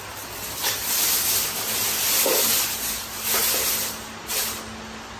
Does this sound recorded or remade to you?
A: recorded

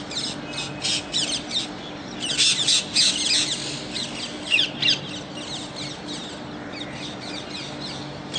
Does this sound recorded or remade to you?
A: recorded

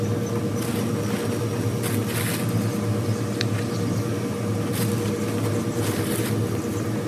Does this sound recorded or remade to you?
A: recorded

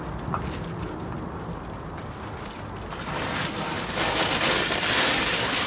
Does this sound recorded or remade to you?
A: recorded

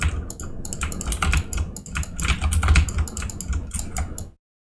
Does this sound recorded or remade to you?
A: recorded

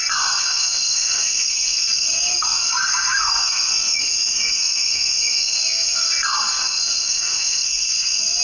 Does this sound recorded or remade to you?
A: remade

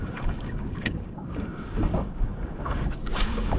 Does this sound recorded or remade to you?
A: remade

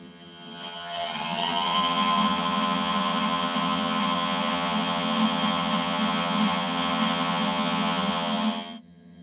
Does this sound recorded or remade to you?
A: remade